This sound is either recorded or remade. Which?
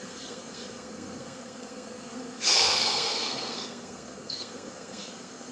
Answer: remade